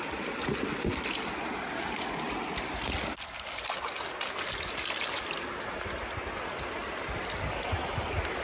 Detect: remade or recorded recorded